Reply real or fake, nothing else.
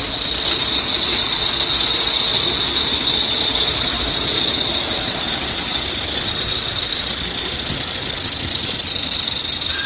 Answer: real